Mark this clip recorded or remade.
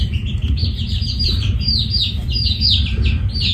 remade